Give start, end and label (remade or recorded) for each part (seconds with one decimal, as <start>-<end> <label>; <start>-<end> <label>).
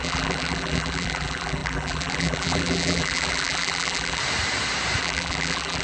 0.0-4.2 remade; 4.2-5.0 recorded; 5.0-5.8 remade